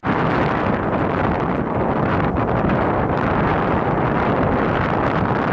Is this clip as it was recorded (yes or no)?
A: yes